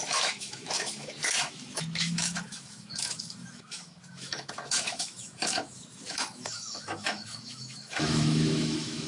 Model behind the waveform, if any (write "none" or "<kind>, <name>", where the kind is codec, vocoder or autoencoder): autoencoder, DAC-VAE